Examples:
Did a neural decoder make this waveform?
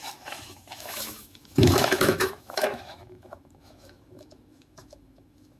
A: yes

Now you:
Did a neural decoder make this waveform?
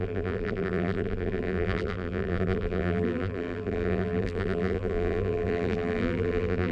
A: yes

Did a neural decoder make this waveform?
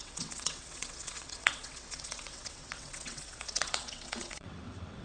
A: yes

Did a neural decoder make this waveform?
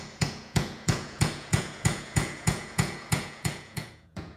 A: yes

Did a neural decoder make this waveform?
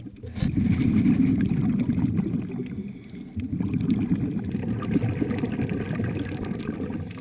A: no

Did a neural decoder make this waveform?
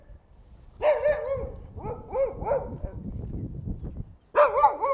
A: no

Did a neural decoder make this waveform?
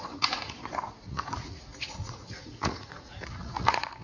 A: yes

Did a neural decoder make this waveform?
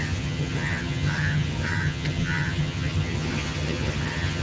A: yes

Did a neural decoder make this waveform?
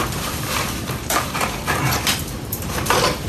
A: yes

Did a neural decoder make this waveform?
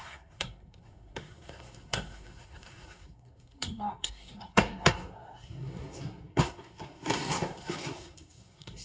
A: yes